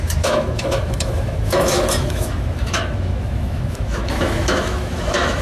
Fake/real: fake